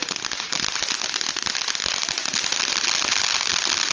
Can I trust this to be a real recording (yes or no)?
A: yes